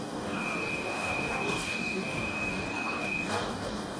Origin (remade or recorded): remade